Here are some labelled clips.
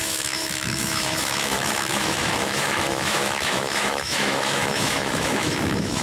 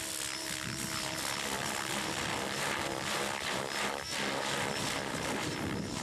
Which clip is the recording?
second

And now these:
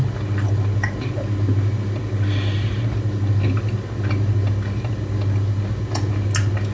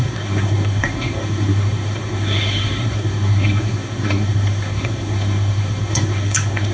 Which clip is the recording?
first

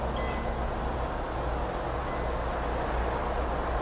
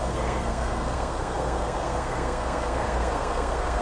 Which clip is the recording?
first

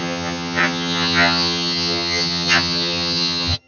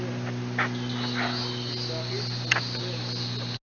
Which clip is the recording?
second